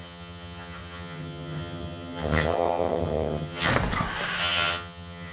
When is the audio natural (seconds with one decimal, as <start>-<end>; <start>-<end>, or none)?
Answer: 3.7-4.4